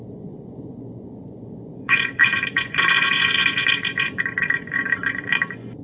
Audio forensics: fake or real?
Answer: fake